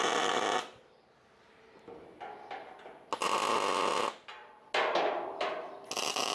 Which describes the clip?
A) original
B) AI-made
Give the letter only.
A